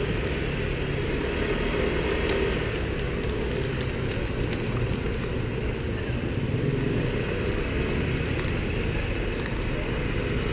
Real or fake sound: real